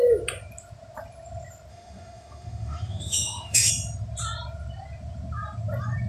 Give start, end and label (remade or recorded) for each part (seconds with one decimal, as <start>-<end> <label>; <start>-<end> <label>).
0.0-1.7 recorded; 1.7-3.7 remade; 3.7-6.1 recorded

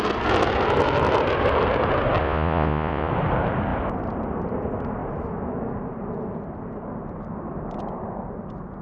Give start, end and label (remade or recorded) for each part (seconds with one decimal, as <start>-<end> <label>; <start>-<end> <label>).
0.0-2.2 recorded; 2.2-3.1 remade; 3.1-8.8 recorded

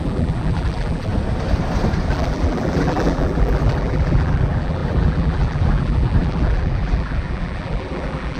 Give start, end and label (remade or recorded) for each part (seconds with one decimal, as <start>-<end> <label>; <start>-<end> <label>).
0.0-1.1 remade; 1.1-2.1 recorded; 2.1-8.4 remade

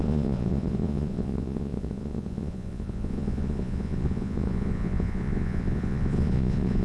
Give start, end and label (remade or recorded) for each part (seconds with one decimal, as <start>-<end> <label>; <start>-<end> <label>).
0.0-6.8 remade